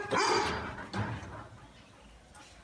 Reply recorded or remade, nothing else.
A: recorded